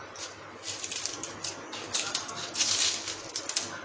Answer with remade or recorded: recorded